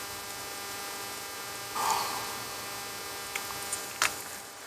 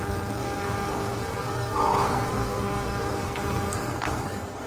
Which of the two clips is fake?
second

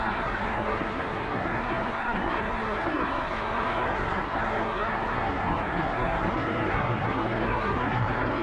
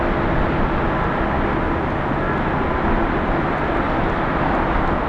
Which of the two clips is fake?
first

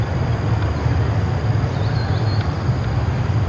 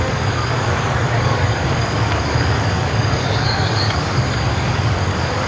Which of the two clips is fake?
second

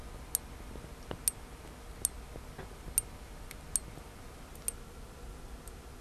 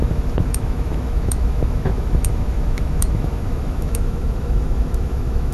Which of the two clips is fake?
second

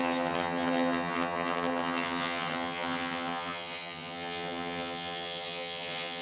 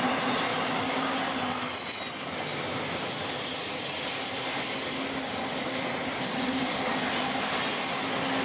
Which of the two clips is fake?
first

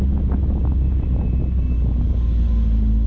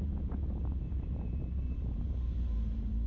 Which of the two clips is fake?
second